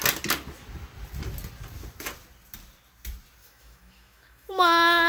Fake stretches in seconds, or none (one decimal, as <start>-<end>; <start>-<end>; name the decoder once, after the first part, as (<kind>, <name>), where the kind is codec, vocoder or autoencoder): 3.4-5.1 (autoencoder, DAC-VAE)